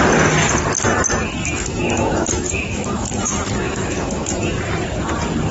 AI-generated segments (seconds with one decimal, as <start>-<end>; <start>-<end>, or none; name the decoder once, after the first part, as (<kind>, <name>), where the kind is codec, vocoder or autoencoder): 1.4-4.7 (autoencoder, DAC-VAE)